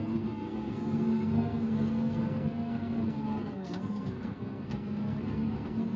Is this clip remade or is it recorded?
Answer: remade